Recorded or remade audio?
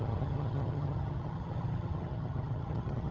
remade